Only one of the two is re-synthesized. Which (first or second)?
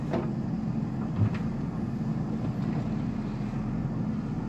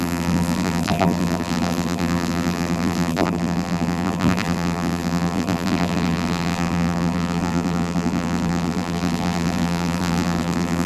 second